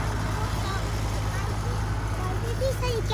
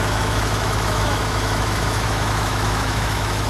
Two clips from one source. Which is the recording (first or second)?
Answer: first